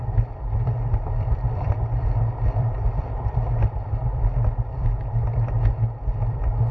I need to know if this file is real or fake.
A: fake